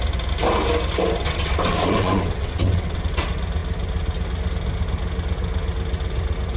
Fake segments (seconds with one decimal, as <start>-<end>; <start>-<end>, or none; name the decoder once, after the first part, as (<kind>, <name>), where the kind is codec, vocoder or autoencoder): 1.2-3.0 (vocoder, WaveNeXt)